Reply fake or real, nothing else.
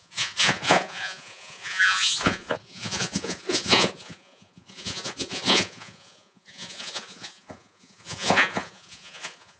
fake